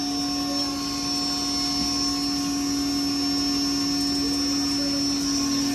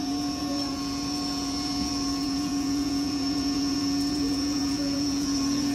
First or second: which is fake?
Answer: second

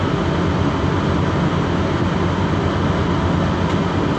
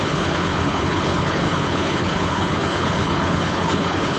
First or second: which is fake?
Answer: second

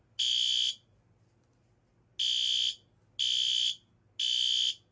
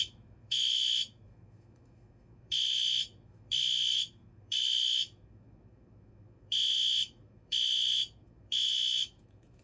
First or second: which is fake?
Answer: second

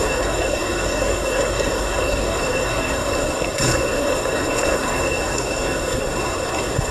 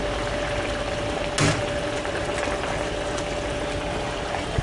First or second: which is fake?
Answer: first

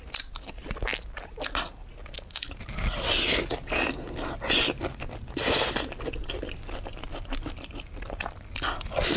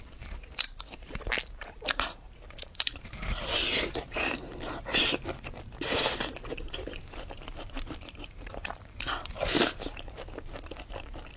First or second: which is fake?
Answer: second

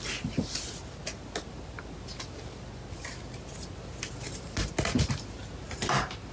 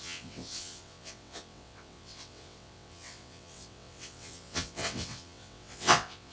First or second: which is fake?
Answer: second